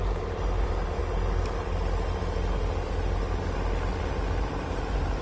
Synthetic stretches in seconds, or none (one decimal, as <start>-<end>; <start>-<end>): 0.0-1.0; 4.1-5.2